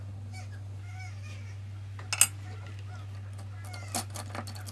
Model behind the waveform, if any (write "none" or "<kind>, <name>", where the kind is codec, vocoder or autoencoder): none